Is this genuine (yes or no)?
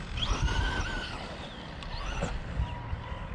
yes